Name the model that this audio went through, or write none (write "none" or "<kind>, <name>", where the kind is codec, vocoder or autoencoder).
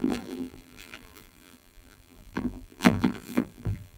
vocoder, BigVGAN v2